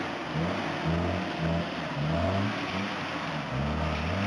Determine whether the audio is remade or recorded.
recorded